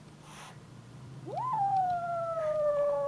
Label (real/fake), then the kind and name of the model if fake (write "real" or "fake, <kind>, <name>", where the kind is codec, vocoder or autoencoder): fake, vocoder, BigVGAN v2